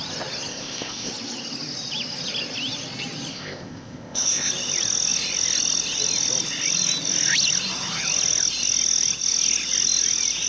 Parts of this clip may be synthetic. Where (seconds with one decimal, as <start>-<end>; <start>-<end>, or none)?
0.5-1.1; 3.3-4.5